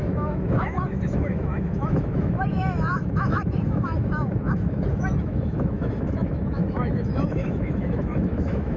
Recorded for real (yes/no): no